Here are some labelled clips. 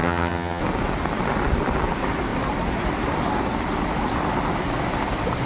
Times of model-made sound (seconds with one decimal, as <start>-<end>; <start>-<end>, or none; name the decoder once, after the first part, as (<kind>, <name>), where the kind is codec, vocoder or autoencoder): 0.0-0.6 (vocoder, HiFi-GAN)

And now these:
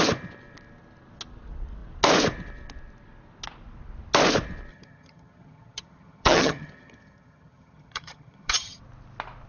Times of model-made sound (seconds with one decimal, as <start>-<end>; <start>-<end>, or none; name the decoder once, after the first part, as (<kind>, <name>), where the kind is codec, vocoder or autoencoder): 4.7-8.8 (vocoder, HiFi-GAN)

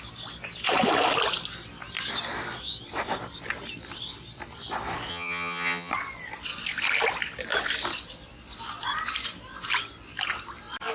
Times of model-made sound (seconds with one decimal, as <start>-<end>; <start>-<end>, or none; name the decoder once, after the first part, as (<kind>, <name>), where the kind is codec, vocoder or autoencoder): 5.1-5.9 (vocoder, HiFi-GAN)

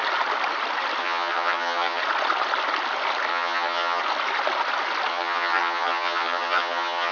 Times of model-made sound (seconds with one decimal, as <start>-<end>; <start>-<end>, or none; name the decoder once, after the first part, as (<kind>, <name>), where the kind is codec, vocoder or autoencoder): 1.0-2.0 (vocoder, HiFi-GAN); 3.3-4.0; 5.1-7.1